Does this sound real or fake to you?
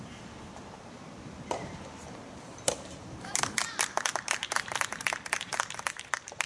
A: fake